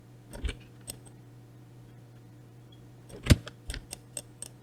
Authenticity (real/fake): real